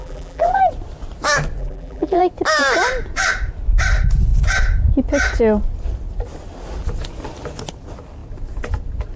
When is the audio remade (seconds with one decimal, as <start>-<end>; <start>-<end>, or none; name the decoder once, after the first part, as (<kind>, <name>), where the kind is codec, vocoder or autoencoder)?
0.0-0.6 (vocoder, BigVGAN v2); 1.6-2.2